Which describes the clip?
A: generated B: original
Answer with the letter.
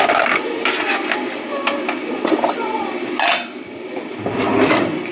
B